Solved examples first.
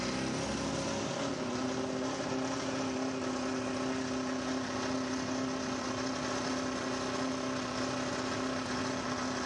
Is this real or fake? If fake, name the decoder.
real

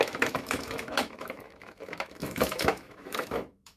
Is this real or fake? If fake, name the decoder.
fake, autoencoder, DAC-VAE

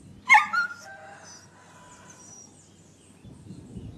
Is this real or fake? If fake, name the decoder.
real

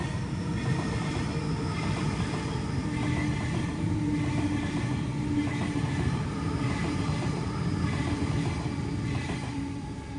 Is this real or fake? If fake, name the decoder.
real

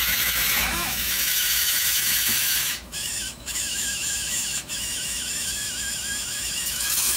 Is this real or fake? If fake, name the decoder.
fake, autoencoder, DAC-VAE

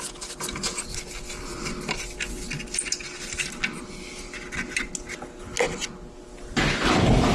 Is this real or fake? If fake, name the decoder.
real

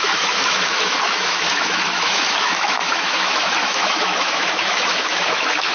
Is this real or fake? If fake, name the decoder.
fake, autoencoder, DAC-VAE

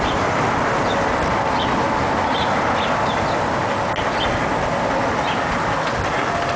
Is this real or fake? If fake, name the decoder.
real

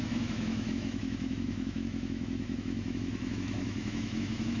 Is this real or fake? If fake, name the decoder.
fake, autoencoder, DAC-VAE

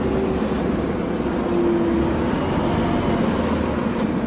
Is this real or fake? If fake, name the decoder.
real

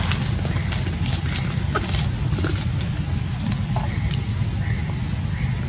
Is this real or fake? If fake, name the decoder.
real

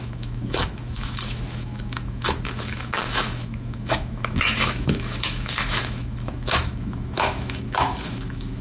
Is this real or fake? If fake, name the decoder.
fake, autoencoder, DAC-VAE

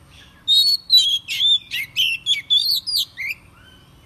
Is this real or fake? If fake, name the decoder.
real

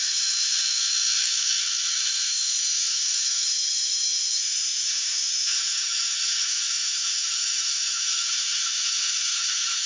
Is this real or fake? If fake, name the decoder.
fake, autoencoder, DAC-VAE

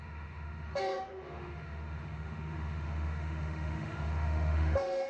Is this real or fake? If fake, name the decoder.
fake, autoencoder, DAC-VAE